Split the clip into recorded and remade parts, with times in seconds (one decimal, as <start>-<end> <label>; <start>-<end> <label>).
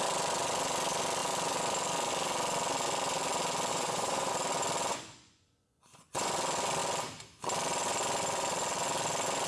0.0-3.7 recorded; 3.7-4.3 remade; 4.3-4.9 recorded; 4.9-6.3 remade; 6.3-9.5 recorded